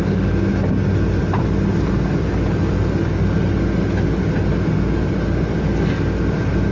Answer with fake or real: real